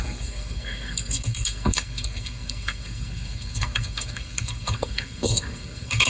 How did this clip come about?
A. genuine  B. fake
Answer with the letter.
B